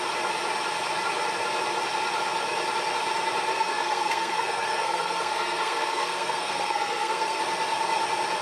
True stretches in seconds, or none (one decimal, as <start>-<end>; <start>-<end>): 0.0-3.5; 7.4-8.4